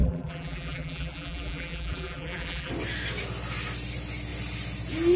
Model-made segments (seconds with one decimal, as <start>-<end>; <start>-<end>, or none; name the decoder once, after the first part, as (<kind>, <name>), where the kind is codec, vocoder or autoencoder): 0.0-2.7 (vocoder, BigVGAN v2)